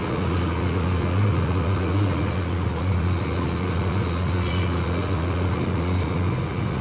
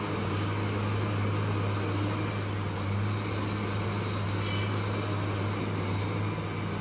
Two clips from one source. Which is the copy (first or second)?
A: first